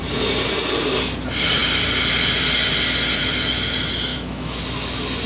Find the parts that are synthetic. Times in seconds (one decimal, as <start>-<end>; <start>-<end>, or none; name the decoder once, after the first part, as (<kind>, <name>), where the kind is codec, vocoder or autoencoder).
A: 4.1-4.6 (autoencoder, DAC-VAE)